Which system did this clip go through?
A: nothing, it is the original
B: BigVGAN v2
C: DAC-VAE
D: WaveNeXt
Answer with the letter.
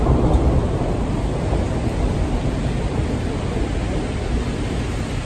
A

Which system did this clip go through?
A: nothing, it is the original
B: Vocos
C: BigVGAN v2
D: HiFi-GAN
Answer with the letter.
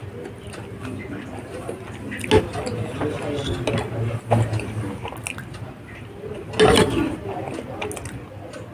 A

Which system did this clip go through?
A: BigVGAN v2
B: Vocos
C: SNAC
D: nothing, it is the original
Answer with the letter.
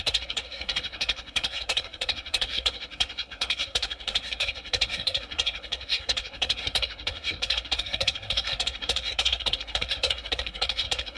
C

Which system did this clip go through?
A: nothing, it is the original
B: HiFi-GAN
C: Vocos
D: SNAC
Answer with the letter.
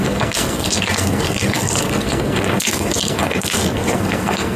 D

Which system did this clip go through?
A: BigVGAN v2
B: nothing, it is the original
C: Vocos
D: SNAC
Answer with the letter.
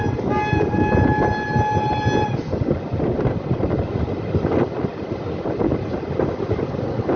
B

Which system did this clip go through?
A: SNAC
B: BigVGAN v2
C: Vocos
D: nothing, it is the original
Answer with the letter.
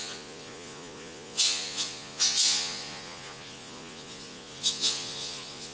C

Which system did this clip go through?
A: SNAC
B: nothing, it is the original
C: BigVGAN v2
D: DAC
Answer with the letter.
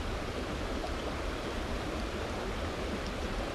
B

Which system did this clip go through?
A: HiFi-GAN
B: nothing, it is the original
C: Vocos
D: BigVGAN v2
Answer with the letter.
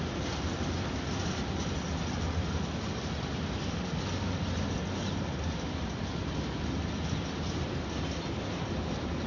B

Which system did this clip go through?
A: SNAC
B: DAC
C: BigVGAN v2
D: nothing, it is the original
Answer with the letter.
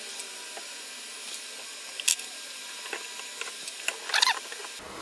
D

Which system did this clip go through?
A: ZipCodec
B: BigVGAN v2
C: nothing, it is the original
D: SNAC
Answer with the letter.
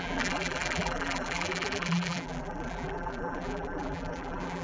B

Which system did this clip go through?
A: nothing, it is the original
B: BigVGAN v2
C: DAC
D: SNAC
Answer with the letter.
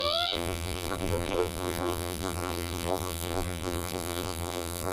B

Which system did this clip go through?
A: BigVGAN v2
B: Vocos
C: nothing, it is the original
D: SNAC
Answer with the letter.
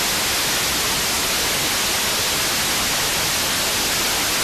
C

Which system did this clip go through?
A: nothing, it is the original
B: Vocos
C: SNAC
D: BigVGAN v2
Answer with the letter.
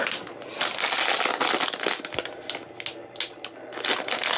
A